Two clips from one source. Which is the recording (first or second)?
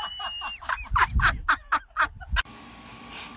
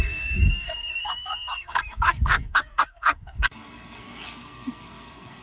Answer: first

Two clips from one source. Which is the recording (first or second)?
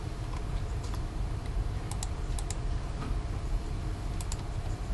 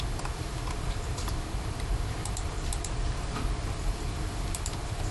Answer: first